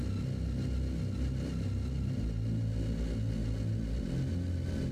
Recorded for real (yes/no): yes